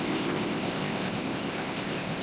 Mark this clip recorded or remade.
remade